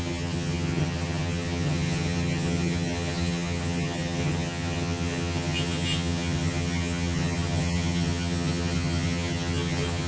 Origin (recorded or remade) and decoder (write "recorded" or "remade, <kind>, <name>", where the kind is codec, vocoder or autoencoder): remade, vocoder, HiFi-GAN